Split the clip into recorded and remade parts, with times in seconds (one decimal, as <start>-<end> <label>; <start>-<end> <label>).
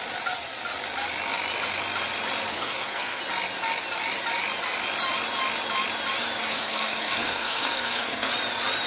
0.0-2.5 recorded; 2.5-3.2 remade; 3.2-6.5 recorded; 6.5-8.3 remade; 8.3-8.9 recorded